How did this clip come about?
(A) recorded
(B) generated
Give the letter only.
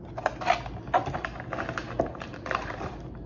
A